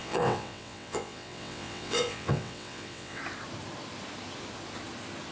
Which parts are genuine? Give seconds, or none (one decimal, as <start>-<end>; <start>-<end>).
3.2-5.3

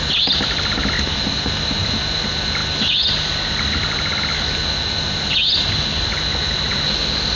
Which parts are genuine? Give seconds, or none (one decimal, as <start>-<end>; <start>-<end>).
0.0-7.4

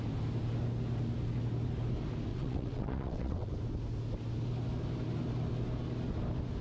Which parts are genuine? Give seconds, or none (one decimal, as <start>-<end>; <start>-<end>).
0.0-2.3; 3.5-6.6

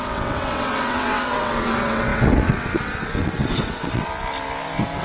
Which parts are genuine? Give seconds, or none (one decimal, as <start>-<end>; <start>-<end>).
4.1-5.0

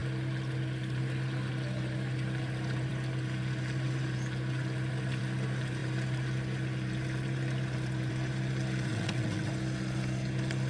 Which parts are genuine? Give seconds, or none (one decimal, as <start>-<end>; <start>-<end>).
0.0-8.9; 9.5-10.7